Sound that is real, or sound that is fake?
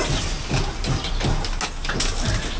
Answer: real